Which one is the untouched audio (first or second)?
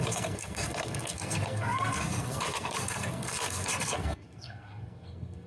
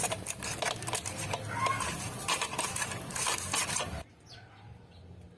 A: second